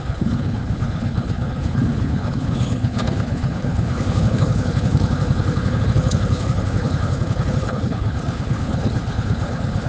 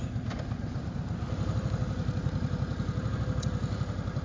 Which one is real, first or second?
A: second